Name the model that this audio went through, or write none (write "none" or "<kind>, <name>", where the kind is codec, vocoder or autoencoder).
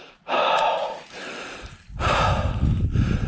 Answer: none